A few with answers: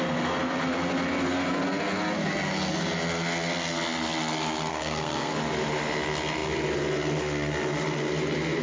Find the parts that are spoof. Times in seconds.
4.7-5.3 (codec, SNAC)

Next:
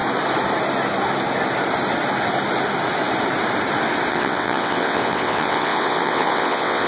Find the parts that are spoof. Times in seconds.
4.1-6.9 (vocoder, WaveNeXt)

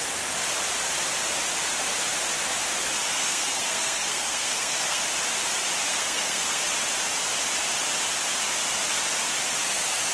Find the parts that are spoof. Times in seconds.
3.1-5.0 (codec, SNAC); 5.9-6.6